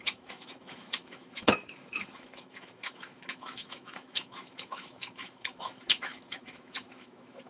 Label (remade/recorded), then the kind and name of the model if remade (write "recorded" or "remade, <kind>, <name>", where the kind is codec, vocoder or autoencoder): remade, autoencoder, DAC-VAE